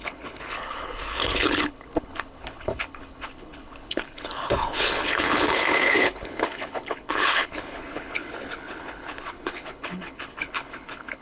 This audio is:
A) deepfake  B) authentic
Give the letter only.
A